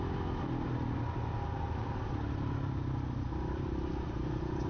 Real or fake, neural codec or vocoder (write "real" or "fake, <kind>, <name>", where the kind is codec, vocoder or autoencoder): real